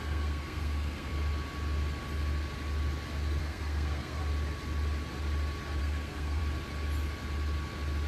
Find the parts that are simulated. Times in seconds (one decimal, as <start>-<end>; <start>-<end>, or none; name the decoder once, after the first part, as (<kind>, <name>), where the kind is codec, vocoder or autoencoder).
0.0-1.1 (codec, SNAC); 3.4-4.2; 5.8-6.4